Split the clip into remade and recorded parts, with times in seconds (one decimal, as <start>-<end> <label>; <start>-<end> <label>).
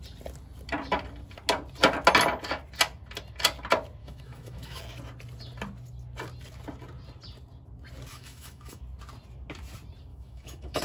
0.0-4.0 recorded; 4.0-4.8 remade; 4.8-8.1 recorded; 8.1-8.8 remade; 8.8-10.1 recorded; 10.1-10.8 remade